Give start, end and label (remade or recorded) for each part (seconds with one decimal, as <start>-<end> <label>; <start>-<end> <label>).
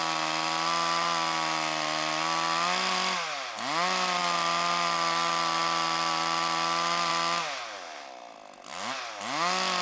0.0-9.8 recorded